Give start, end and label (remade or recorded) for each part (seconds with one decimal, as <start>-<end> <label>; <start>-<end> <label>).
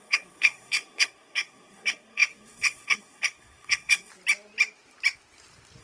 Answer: 0.0-4.1 remade; 4.1-5.8 recorded